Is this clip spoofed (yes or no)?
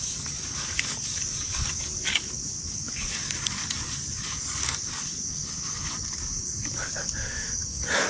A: yes